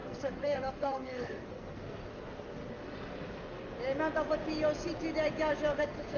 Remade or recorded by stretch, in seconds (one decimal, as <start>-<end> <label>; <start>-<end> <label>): 0.0-2.1 remade; 2.1-5.8 recorded; 5.8-6.2 remade